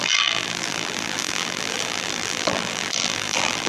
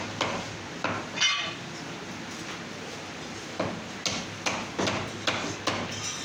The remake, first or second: first